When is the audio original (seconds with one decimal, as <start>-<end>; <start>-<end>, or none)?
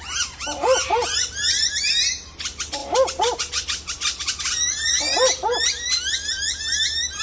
0.0-7.2